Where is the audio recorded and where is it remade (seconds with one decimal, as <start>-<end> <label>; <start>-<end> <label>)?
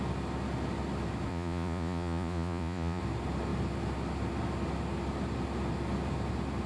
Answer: 0.0-1.3 recorded; 1.3-3.0 remade; 3.0-6.7 recorded